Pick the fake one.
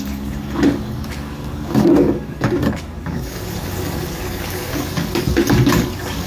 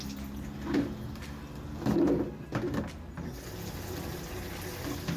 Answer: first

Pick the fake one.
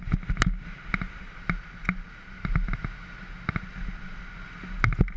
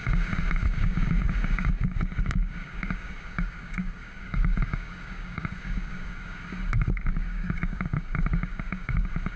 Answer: second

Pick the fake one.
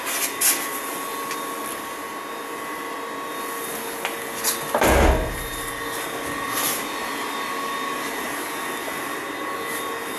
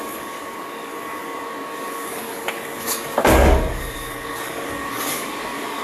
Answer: second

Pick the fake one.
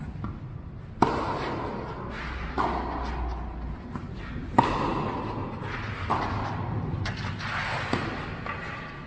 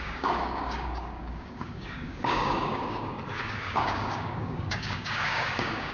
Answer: second